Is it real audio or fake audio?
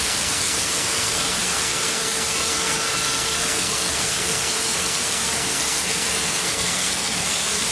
fake